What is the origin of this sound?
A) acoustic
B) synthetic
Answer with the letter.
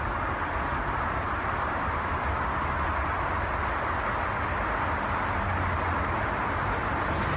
A